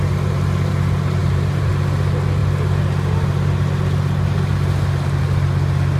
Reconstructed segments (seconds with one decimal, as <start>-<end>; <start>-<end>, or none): 1.2-1.7